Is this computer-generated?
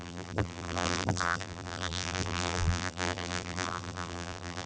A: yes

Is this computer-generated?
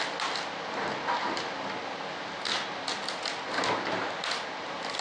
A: no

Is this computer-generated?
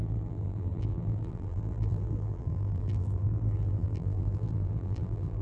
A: yes